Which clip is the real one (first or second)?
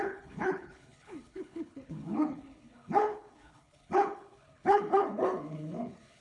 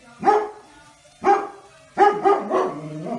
second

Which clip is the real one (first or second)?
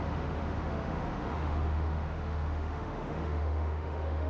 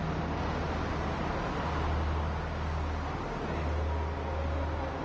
second